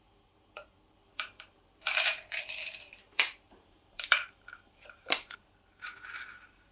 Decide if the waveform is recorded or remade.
remade